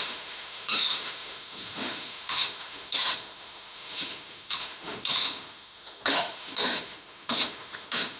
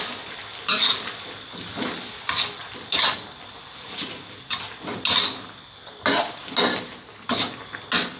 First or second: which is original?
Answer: second